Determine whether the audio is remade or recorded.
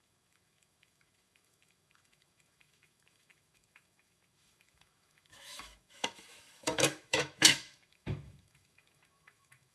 remade